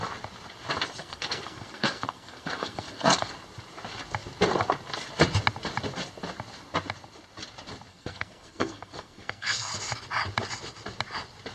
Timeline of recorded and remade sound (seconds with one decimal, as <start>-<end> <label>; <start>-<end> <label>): 0.0-1.0 recorded; 1.0-3.3 remade; 3.3-7.9 recorded; 7.9-9.7 remade; 9.7-11.5 recorded